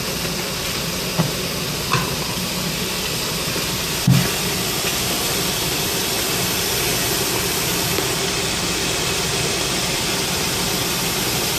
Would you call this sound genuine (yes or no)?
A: yes